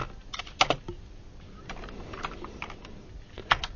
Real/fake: real